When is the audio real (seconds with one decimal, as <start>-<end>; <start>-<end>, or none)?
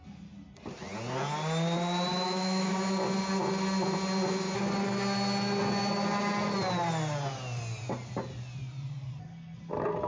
0.0-2.1; 2.7-10.1